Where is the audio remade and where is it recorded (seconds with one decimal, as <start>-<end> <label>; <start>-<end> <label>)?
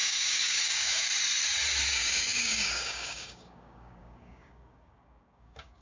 0.0-1.1 remade; 1.1-1.9 recorded; 1.9-5.8 remade